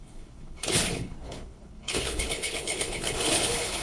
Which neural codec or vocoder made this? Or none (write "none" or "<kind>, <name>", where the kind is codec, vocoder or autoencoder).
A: codec, HILCodec